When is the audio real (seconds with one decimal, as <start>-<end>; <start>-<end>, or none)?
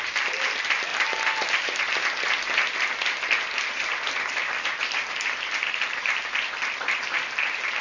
0.9-3.7